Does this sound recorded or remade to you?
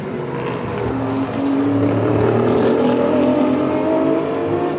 recorded